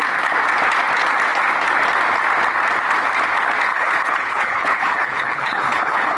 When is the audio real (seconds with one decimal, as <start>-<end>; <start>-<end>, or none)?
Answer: 0.0-3.7